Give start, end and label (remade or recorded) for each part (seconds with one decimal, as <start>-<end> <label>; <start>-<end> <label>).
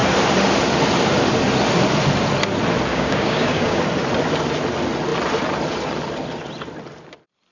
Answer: 0.0-2.9 recorded; 2.9-3.8 remade; 3.8-7.5 recorded